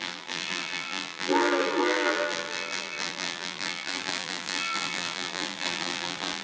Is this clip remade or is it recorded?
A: remade